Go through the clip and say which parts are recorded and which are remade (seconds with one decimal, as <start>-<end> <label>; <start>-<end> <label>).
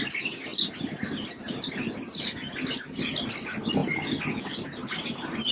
0.0-5.5 recorded